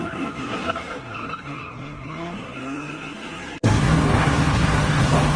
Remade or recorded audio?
remade